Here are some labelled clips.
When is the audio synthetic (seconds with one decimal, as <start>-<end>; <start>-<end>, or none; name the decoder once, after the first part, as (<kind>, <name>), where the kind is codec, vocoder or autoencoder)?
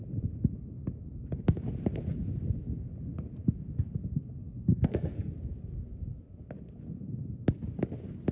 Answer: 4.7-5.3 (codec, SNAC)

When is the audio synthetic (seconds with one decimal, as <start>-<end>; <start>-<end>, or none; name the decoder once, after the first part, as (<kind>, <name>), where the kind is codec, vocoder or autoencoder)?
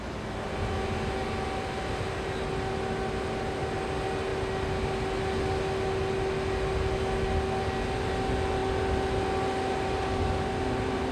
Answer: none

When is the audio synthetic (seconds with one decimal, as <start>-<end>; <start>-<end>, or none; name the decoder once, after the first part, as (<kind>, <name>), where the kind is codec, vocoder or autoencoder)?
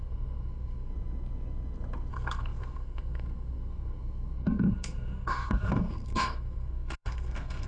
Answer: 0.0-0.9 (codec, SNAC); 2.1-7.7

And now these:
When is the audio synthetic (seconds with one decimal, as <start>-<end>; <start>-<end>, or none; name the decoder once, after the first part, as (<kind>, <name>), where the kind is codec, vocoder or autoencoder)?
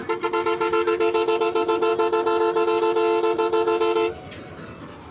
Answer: none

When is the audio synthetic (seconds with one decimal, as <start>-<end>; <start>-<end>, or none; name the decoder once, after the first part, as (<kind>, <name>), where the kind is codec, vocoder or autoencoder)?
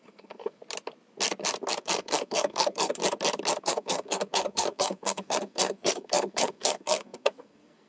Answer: 0.0-0.6 (codec, SNAC); 1.8-3.0; 3.6-7.9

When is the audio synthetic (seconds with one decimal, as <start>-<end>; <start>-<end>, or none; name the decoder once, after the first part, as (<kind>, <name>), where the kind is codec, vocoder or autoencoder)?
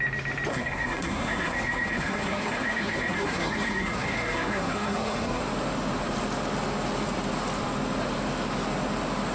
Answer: 0.5-5.4 (codec, SNAC)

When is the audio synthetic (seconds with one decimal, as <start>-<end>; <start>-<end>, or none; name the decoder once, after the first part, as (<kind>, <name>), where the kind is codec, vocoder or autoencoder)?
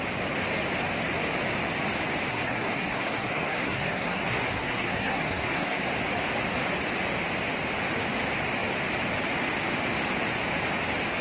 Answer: 2.3-5.8 (codec, SNAC)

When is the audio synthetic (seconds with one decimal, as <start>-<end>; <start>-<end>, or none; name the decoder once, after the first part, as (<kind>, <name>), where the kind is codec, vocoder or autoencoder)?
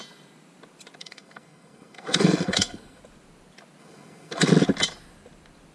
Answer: 1.0-3.0 (codec, SNAC); 3.8-4.4